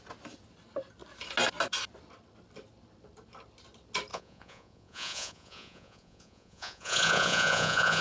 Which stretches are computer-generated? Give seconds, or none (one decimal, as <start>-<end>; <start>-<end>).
4.1-8.0